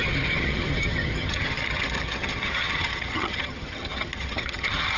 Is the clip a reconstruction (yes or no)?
yes